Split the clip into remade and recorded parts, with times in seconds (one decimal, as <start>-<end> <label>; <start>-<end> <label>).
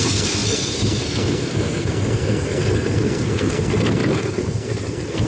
0.0-5.3 remade